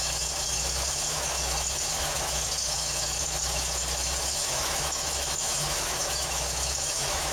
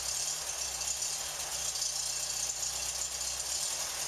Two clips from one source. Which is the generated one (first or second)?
first